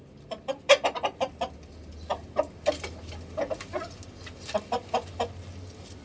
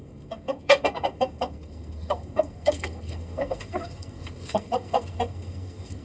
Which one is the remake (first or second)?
second